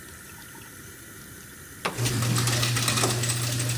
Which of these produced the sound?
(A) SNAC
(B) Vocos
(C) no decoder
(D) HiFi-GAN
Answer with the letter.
C